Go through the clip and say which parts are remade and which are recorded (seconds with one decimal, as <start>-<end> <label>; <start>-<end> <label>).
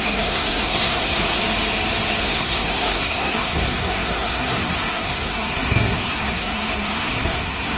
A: 0.0-1.4 remade; 1.4-2.2 recorded; 2.2-7.8 remade